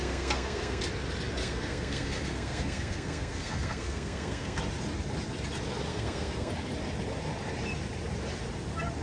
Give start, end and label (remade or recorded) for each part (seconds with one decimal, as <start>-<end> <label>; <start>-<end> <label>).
0.0-0.8 remade; 0.8-1.4 recorded; 1.4-4.6 remade; 4.6-5.9 recorded; 5.9-6.5 remade; 6.5-9.0 recorded